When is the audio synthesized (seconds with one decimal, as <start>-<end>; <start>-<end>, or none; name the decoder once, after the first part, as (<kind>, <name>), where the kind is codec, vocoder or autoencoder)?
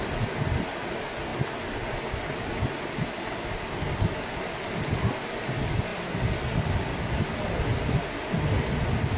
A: none